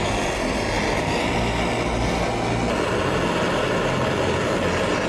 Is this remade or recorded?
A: recorded